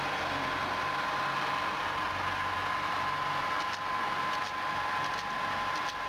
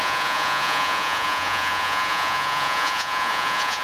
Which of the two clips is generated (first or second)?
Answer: second